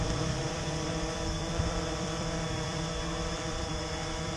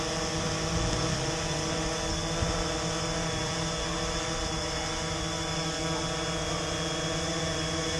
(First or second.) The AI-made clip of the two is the first